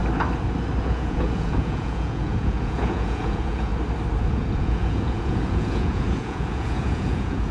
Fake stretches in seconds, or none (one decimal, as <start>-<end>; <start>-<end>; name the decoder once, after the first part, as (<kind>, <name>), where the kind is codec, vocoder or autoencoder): 0.8-3.7 (vocoder, Vocos); 4.2-7.5